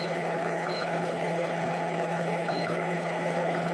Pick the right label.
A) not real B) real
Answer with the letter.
A